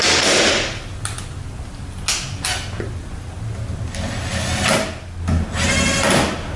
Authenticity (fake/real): real